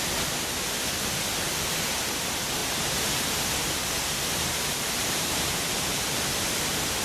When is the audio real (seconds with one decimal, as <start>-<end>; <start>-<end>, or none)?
0.0-2.6; 5.8-7.0